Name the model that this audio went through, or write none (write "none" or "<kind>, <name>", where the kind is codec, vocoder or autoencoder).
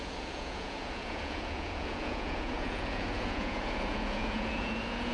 vocoder, Vocos